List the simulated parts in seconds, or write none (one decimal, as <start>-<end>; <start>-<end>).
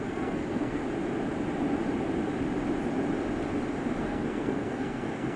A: 0.0-0.8; 4.0-5.4